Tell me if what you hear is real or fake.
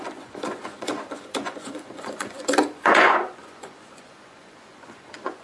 fake